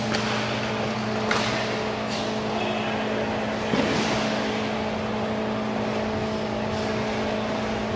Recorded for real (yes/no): yes